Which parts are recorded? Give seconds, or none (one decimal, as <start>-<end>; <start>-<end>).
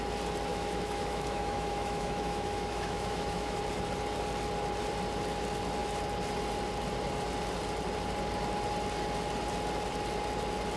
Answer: 0.0-0.5; 3.6-10.8